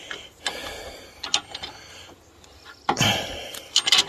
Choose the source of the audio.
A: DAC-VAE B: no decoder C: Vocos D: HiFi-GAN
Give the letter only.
B